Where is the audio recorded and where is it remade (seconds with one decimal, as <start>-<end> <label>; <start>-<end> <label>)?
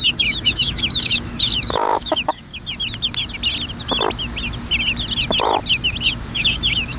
0.0-2.5 remade; 2.5-6.1 recorded; 6.1-7.0 remade